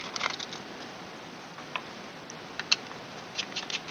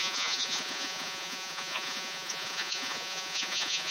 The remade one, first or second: second